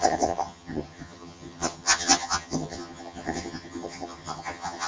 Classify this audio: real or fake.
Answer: fake